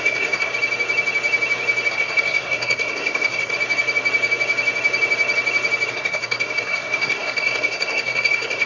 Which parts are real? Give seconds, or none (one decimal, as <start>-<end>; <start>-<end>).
0.5-1.9; 3.5-5.9